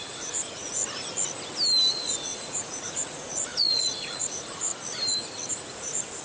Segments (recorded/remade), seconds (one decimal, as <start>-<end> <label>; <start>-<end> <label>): 0.0-0.8 remade; 0.8-1.9 recorded; 1.9-4.7 remade; 4.7-5.5 recorded; 5.5-6.2 remade